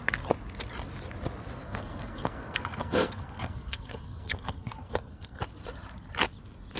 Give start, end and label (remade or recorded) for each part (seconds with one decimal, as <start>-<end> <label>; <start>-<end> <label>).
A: 0.0-1.6 recorded; 1.6-5.4 remade; 5.4-6.8 recorded